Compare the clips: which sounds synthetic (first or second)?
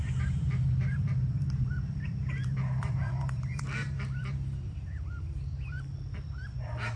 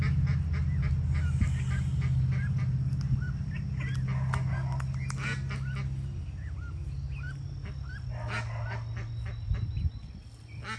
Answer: first